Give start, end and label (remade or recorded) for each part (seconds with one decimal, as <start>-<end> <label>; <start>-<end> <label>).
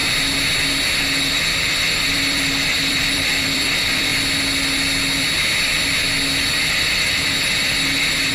0.0-1.0 recorded; 1.0-4.1 remade; 4.1-6.7 recorded; 6.7-8.3 remade